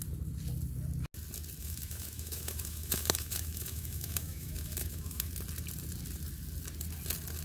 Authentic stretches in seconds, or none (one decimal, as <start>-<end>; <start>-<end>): 0.0-1.6; 5.3-7.4